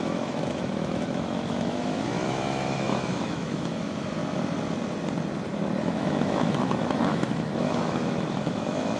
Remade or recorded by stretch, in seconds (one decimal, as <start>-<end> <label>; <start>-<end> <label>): 0.0-4.2 remade; 4.2-5.8 recorded; 5.8-9.0 remade

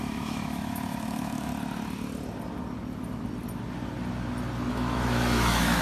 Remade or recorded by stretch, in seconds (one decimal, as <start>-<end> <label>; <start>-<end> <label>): 0.0-1.5 remade; 1.5-4.7 recorded; 4.7-5.8 remade

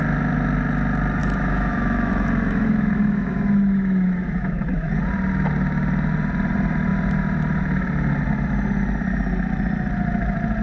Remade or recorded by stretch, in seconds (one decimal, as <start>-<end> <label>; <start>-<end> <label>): 0.0-1.2 recorded; 1.2-5.0 remade; 5.0-10.6 recorded

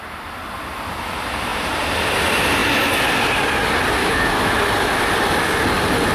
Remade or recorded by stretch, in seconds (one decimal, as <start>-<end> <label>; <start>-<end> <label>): 0.0-4.0 recorded; 4.0-4.5 remade; 4.5-6.1 recorded

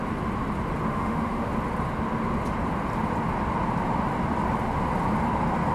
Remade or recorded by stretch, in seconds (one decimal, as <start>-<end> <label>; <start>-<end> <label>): 0.0-0.9 recorded; 0.9-1.5 remade; 1.5-5.7 recorded

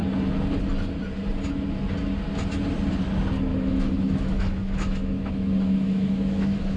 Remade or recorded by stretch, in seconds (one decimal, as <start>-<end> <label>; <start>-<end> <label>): 0.0-3.5 recorded; 3.5-6.8 remade

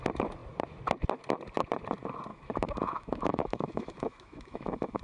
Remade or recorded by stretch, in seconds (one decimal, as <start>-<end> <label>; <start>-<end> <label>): 0.0-2.3 recorded; 2.3-5.0 remade